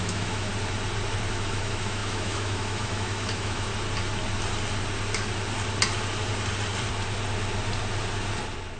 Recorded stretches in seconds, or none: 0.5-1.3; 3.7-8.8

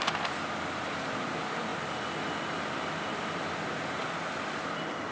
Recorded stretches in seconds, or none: none

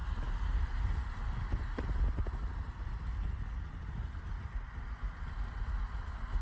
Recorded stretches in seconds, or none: 0.0-6.4

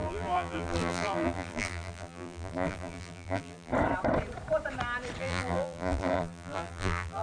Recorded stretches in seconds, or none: 3.7-5.2

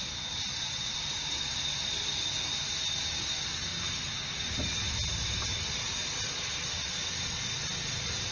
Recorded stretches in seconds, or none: 0.0-8.3

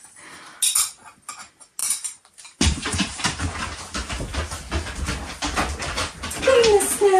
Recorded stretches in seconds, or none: 0.0-1.8; 3.4-7.2

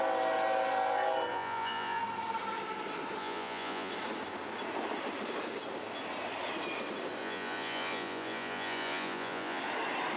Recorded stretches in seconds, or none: 0.0-1.3; 2.0-3.2; 3.9-7.2; 9.6-10.2

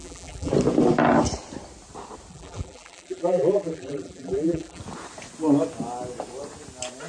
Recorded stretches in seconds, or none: 0.5-2.3; 4.8-7.1